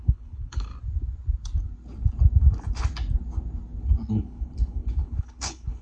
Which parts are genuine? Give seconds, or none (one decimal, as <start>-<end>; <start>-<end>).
0.7-4.1